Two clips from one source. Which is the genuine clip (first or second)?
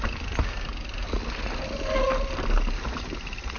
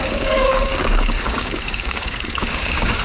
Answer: first